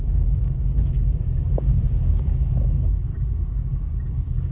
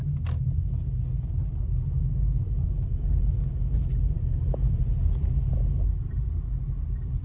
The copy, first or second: first